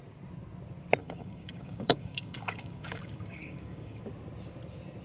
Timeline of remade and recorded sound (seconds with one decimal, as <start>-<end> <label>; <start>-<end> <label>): 0.0-1.0 recorded; 1.0-4.0 remade; 4.0-5.0 recorded